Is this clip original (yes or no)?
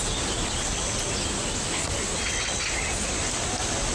yes